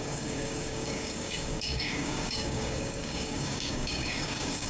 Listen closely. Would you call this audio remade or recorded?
remade